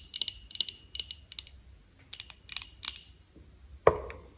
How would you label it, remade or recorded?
recorded